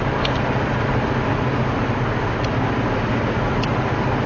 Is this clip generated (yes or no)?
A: no